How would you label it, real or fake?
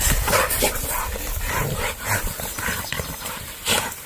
real